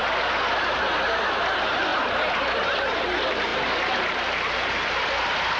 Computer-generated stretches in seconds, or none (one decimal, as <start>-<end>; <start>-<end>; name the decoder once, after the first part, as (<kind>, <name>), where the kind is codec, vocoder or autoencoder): 1.2-5.6 (vocoder, BigVGAN v2)